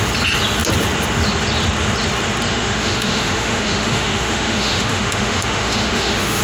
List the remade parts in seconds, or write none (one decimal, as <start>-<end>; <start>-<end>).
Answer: 2.5-6.4